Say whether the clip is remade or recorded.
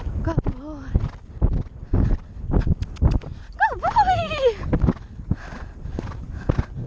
recorded